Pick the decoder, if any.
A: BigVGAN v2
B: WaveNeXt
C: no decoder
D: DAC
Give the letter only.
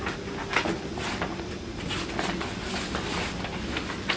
C